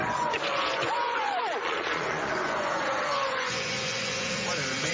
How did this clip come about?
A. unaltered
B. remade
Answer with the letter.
B